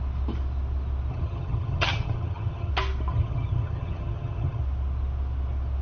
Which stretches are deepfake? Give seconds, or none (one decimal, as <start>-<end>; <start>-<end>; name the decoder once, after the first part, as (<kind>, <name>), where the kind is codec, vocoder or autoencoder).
1.1-2.7 (vocoder, HiFi-GAN); 3.1-4.6